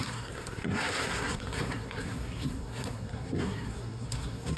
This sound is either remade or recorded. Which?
remade